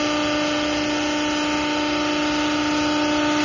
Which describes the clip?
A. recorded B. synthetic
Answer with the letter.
A